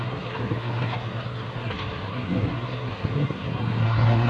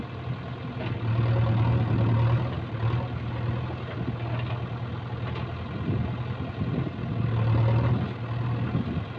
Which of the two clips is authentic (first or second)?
second